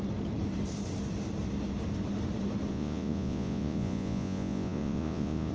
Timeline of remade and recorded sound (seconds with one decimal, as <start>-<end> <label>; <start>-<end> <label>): 0.0-2.7 recorded; 2.7-5.5 remade